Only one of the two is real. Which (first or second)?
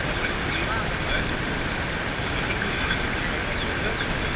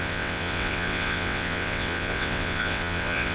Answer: first